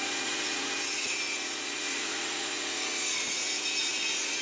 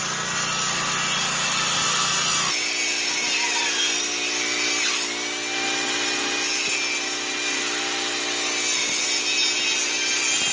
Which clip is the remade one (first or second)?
first